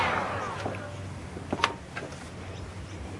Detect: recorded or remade recorded